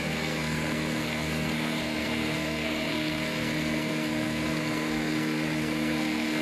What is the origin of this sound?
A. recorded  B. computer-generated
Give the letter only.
B